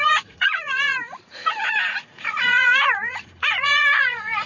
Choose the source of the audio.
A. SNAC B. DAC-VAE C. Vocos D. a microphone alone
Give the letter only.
C